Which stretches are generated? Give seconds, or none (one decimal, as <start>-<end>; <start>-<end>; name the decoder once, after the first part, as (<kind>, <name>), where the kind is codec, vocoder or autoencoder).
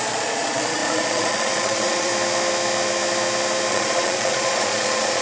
0.0-2.1 (vocoder, Vocos); 3.7-5.2